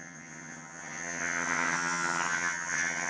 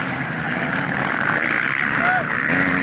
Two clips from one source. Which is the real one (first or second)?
second